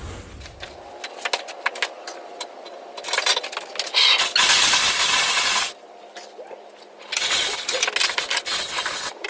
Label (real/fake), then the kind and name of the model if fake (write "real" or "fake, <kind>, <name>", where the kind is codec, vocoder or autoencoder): real